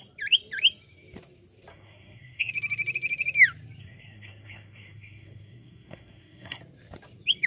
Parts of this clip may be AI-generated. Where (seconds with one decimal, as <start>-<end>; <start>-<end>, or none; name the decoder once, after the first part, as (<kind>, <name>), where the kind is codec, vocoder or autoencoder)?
1.7-2.5 (codec, SNAC); 3.8-6.6